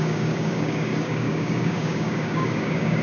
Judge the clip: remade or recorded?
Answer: remade